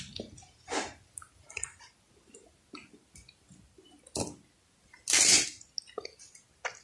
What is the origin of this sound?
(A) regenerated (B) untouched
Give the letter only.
B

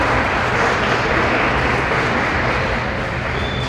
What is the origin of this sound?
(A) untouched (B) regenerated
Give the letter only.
A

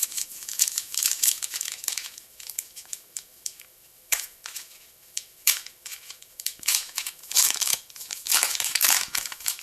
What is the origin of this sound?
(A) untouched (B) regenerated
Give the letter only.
B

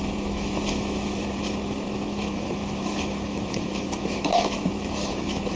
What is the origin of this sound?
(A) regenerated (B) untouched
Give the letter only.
A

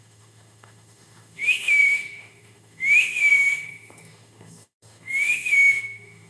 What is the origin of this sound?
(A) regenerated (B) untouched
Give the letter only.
A